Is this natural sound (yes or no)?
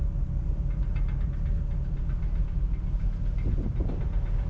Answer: yes